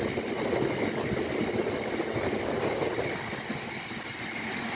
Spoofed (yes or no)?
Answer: no